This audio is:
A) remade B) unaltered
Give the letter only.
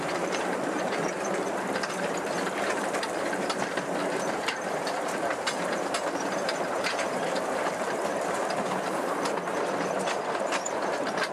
A